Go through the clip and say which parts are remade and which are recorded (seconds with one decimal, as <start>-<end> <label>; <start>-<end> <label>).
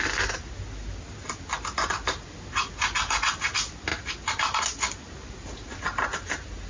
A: 0.0-6.7 recorded